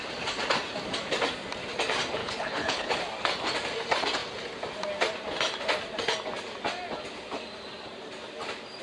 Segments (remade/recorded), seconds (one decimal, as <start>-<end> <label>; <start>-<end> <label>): 0.0-2.2 recorded; 2.2-3.0 remade; 3.0-8.8 recorded